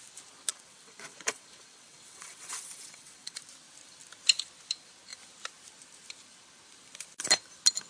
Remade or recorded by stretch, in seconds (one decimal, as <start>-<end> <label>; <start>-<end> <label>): 0.0-0.5 recorded; 0.5-3.4 remade; 3.4-7.9 recorded